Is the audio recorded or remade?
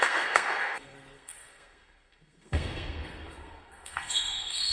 remade